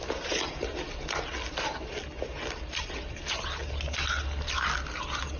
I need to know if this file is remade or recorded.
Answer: recorded